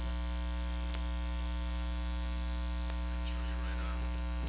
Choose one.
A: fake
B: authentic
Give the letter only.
B